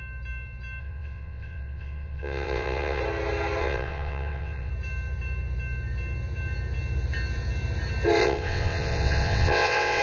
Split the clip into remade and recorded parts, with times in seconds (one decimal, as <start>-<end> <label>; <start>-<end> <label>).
0.0-0.8 recorded; 0.8-3.0 remade; 3.0-3.6 recorded; 3.6-4.7 remade; 4.7-8.2 recorded; 8.2-10.0 remade